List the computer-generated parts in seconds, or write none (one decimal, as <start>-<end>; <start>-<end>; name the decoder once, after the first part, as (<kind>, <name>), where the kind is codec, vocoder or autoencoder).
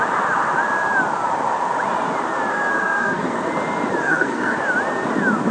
2.5-3.5 (codec, SNAC); 4.0-4.6